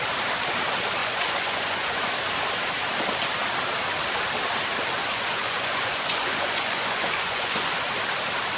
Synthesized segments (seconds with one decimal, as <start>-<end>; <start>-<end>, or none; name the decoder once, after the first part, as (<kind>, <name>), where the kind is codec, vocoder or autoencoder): 1.0-2.2 (vocoder, Vocos); 5.0-7.7